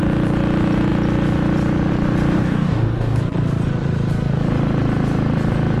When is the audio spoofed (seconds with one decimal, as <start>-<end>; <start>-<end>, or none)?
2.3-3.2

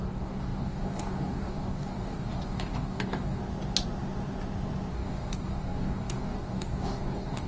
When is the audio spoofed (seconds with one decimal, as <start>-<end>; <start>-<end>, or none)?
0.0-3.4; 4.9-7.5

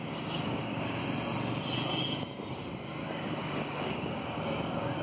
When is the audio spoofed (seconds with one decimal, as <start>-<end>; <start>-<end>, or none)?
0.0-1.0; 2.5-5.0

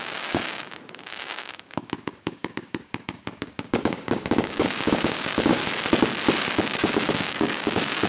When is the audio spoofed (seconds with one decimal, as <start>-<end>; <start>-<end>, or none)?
0.0-5.6; 6.5-8.1

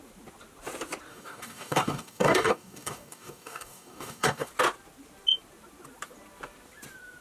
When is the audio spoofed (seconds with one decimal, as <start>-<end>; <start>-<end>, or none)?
1.1-4.5

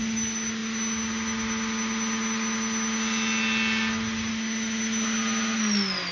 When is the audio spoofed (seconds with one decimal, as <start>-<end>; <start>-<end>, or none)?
none